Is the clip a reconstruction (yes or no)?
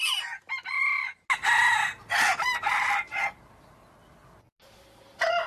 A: no